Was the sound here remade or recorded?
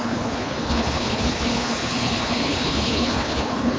remade